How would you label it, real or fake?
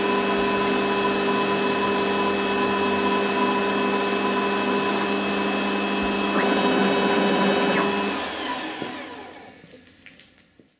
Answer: real